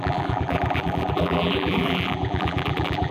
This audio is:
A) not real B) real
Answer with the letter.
A